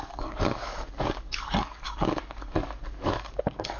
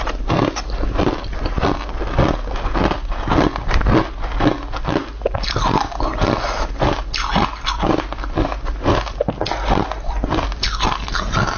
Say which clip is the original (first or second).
second